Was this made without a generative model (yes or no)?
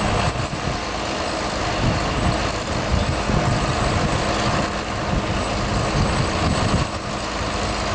yes